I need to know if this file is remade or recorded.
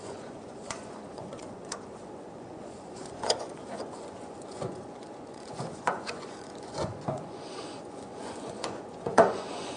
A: remade